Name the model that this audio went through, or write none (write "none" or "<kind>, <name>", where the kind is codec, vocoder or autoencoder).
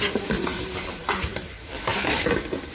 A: none